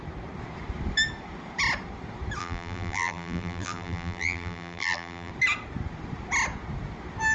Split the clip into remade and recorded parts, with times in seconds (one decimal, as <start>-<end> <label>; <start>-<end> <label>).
0.0-2.4 recorded; 2.4-5.3 remade; 5.3-7.3 recorded